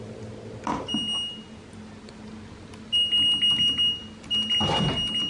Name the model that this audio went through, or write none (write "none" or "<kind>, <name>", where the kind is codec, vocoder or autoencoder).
none